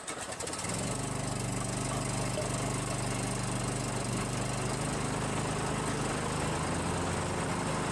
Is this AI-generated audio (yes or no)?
no